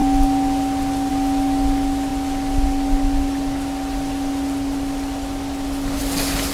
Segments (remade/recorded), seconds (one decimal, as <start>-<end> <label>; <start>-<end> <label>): 0.0-6.5 recorded